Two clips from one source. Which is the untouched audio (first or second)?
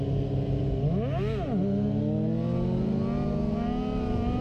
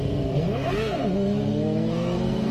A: first